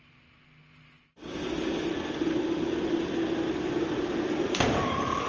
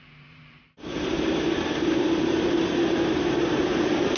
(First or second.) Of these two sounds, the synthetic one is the second